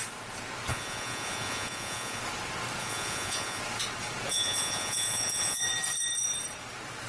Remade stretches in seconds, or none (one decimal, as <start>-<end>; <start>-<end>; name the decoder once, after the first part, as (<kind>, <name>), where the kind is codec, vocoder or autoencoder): 0.7-2.2 (vocoder, Vocos); 2.8-3.6; 4.3-5.6